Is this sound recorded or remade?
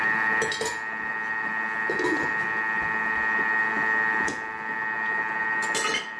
recorded